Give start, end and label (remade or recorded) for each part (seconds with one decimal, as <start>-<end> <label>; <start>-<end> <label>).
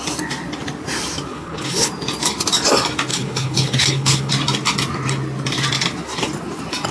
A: 0.0-1.3 recorded; 1.3-1.9 remade; 1.9-3.1 recorded; 3.1-4.3 remade; 4.3-6.9 recorded